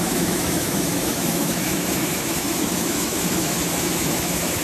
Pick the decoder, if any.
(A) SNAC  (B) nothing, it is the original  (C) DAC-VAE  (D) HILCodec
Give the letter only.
C